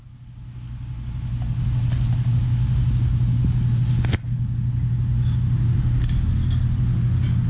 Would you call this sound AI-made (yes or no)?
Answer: no